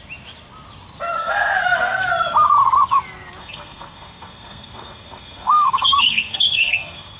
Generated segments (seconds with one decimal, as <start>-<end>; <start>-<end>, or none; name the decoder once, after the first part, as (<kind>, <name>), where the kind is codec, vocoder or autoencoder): 1.2-2.1 (codec, SNAC); 3.4-7.2